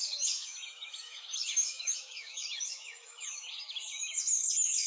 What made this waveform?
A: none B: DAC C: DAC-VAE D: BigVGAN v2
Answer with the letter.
C